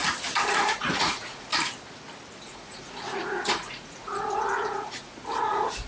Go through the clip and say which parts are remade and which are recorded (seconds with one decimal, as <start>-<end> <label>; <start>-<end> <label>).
0.0-0.5 recorded; 0.5-1.5 remade; 1.5-2.4 recorded; 2.4-5.9 remade